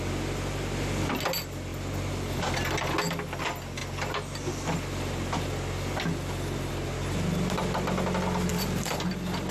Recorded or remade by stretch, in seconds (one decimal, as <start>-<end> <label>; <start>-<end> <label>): 0.0-8.5 recorded; 8.5-9.1 remade; 9.1-9.5 recorded